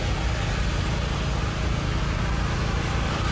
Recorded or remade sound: recorded